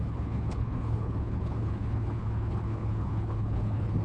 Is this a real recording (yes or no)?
no